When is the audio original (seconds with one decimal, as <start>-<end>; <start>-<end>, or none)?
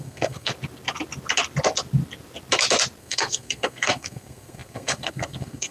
0.5-3.0